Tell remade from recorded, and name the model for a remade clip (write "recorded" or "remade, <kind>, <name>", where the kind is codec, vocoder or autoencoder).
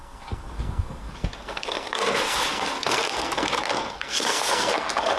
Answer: remade, codec, SNAC